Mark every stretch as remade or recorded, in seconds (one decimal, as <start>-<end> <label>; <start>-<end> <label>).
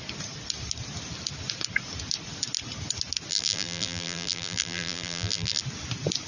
0.0-3.3 recorded; 3.3-5.6 remade; 5.6-6.3 recorded